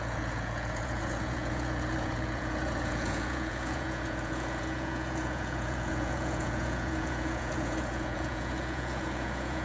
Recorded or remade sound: remade